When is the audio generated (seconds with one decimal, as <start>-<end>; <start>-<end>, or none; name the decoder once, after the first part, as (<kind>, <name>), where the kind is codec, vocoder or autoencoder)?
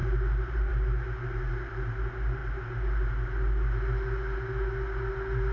none